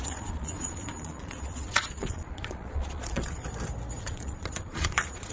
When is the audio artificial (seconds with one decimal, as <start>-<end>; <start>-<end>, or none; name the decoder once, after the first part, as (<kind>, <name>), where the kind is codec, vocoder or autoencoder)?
0.0-3.4 (vocoder, Vocos); 4.0-5.3